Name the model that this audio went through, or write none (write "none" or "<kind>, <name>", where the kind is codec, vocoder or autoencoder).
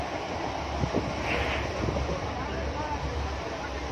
none